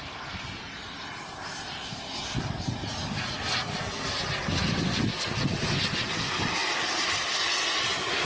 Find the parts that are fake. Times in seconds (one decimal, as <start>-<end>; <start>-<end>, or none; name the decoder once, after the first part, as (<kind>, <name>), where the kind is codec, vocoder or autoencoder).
none